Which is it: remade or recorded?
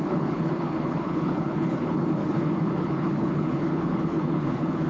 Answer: remade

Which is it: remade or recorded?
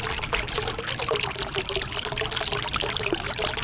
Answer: recorded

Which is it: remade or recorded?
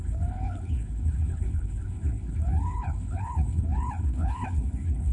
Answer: remade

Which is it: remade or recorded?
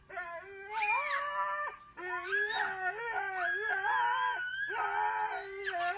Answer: recorded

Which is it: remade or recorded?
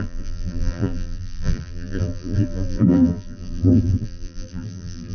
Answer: remade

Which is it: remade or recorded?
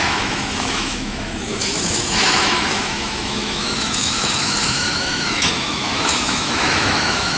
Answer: remade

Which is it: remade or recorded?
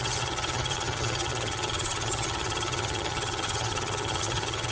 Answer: remade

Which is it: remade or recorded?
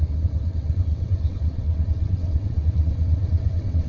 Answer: remade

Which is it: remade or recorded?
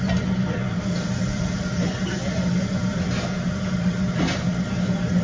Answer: recorded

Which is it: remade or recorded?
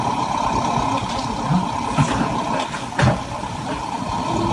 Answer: recorded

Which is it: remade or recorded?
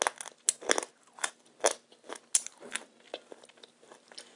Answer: recorded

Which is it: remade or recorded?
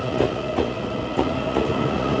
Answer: remade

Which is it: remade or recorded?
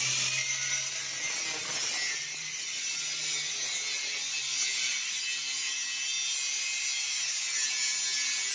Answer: recorded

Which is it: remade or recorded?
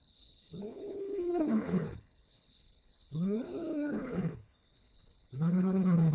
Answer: remade